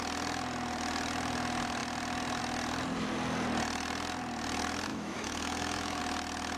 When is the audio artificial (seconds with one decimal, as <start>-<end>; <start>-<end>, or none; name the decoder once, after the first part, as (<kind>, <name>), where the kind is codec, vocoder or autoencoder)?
4.9-6.0 (autoencoder, DAC-VAE)